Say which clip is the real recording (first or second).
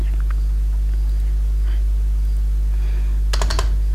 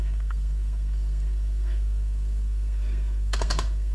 first